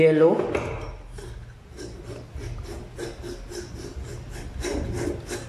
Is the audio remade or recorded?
recorded